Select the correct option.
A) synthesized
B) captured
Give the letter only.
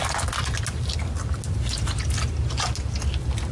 B